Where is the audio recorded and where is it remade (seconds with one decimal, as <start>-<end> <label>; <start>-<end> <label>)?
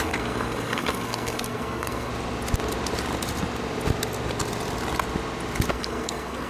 0.0-2.1 remade; 2.1-5.7 recorded; 5.7-6.5 remade